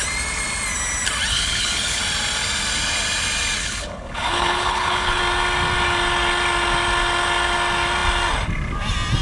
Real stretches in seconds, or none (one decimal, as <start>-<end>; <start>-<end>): 0.0-1.3; 2.0-3.6; 5.2-9.2